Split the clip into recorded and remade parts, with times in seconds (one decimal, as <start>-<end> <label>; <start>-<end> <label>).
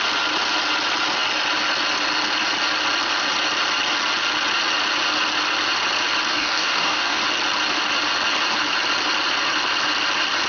0.0-6.3 recorded; 6.3-7.2 remade; 7.2-10.5 recorded